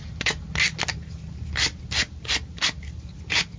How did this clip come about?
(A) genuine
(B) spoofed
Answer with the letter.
A